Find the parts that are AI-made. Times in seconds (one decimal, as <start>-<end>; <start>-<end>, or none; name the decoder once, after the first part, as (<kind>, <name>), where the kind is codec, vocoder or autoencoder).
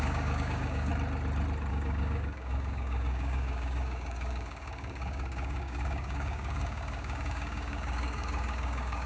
0.0-0.9 (codec, DAC); 1.7-9.1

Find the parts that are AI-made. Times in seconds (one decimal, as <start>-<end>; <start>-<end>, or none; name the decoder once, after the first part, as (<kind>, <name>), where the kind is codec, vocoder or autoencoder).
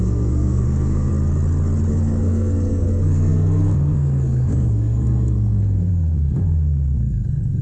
0.0-1.1 (codec, SNAC); 1.9-7.6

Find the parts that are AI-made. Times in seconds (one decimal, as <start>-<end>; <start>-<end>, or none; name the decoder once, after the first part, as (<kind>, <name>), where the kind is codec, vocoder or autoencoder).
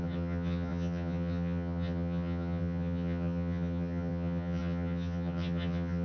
0.0-6.0 (vocoder, HiFi-GAN)